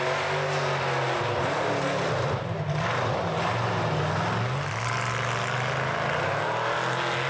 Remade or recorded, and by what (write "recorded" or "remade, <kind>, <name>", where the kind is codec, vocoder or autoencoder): recorded